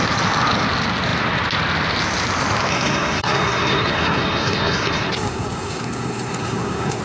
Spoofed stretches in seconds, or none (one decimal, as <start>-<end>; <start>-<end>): 2.7-7.0